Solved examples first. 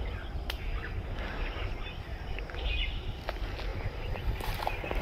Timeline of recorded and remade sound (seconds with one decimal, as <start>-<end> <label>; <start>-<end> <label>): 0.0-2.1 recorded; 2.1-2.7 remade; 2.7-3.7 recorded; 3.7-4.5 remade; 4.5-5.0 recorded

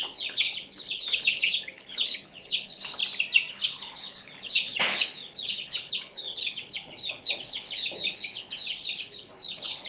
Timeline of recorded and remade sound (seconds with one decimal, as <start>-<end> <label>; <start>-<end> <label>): 0.0-3.0 remade; 3.0-3.5 recorded; 3.5-9.9 remade

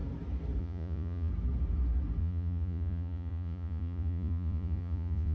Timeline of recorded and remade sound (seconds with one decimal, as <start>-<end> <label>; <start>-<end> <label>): 0.0-0.6 recorded; 0.6-1.3 remade; 1.3-2.2 recorded; 2.2-5.3 remade